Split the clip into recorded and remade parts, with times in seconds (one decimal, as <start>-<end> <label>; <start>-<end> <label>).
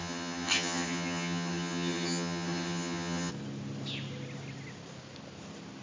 0.0-3.3 remade; 3.3-5.8 recorded